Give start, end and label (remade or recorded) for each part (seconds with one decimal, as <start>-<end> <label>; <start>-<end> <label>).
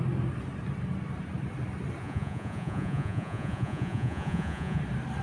0.0-2.0 recorded; 2.0-4.8 remade; 4.8-5.2 recorded